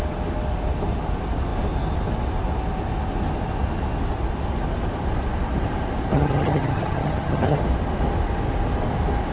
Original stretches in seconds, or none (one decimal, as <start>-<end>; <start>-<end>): 0.0-6.1; 7.6-9.3